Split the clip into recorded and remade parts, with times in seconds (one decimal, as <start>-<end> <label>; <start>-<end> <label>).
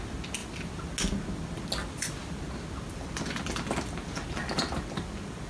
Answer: 0.0-5.5 recorded